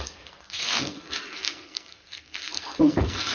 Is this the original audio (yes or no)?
no